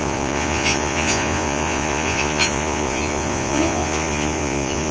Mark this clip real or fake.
fake